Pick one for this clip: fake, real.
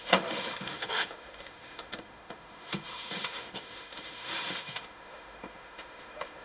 fake